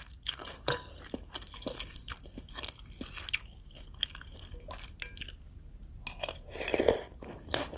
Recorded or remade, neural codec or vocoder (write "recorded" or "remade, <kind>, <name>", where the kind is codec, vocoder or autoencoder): recorded